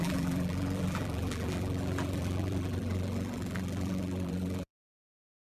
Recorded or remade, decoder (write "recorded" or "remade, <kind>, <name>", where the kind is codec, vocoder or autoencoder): remade, vocoder, BigVGAN v2